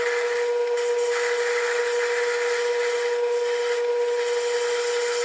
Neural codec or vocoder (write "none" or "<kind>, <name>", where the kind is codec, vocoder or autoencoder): none